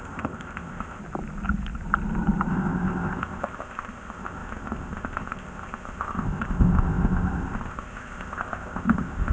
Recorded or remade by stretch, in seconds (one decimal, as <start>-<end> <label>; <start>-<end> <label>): 0.0-1.0 remade; 1.0-2.5 recorded; 2.5-9.3 remade